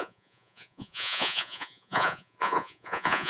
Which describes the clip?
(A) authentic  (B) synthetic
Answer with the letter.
B